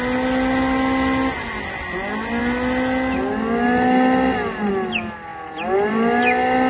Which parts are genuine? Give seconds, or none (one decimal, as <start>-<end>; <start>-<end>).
0.0-6.7